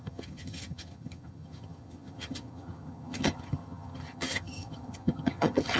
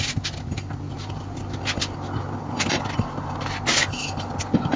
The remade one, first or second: first